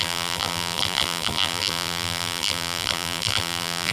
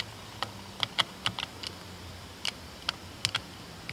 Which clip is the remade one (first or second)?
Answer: first